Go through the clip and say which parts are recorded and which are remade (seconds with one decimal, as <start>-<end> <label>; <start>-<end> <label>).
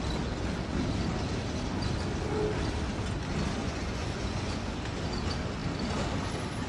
0.0-3.6 recorded; 3.6-4.8 remade; 4.8-6.7 recorded